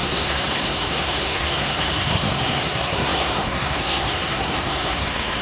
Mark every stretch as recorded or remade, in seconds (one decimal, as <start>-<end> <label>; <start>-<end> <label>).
0.0-5.4 remade